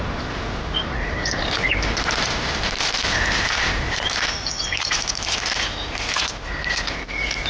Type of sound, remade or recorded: remade